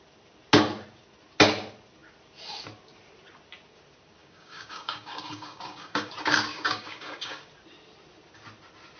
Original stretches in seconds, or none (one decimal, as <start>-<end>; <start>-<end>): 0.0-4.2; 6.1-6.5; 7.5-9.0